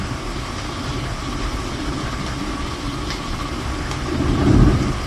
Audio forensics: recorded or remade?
recorded